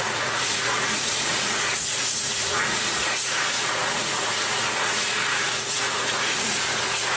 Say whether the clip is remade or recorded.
remade